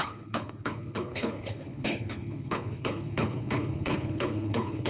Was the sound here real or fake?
fake